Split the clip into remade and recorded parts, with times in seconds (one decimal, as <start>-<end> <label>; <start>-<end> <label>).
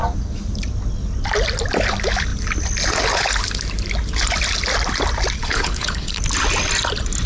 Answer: 0.0-5.4 recorded; 5.4-6.2 remade; 6.2-7.3 recorded